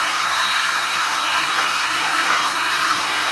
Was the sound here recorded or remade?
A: remade